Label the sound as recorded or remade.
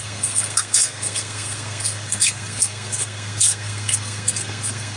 remade